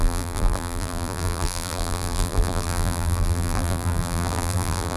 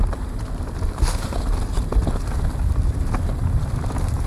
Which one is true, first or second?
second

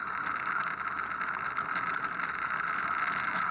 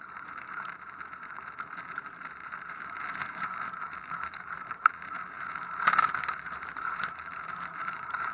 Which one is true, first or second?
first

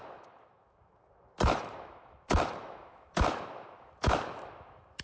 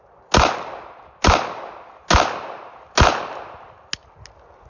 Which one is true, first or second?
second